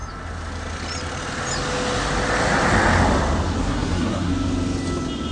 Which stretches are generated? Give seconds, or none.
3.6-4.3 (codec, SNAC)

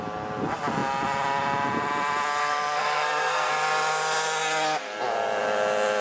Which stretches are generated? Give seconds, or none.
2.4-3.5 (codec, SNAC)

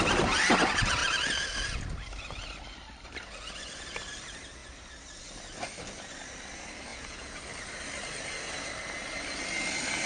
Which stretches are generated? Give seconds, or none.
6.9-7.4 (vocoder, Vocos)

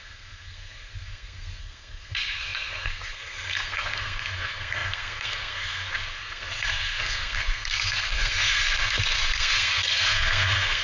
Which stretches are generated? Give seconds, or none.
0.0-10.8 (codec, SNAC)

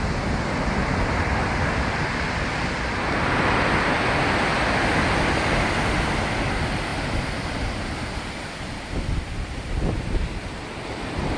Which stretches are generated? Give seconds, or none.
none